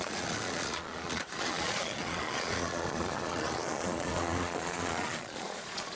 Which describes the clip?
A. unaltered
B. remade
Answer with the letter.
B